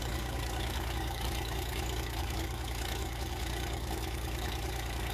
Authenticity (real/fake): fake